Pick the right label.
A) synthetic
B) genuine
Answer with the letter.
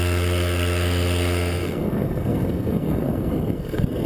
A